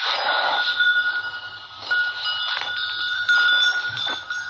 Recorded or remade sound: recorded